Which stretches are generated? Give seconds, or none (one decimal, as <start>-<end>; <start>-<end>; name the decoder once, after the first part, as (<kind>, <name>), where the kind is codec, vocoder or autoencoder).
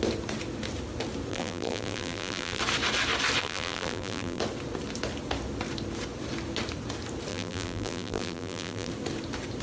1.3-2.6 (vocoder, BigVGAN v2); 3.4-4.4; 7.3-8.9